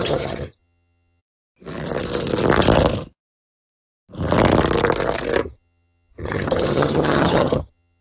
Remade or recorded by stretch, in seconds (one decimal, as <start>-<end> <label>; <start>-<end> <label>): 0.0-1.2 remade; 1.2-5.4 recorded; 5.4-8.0 remade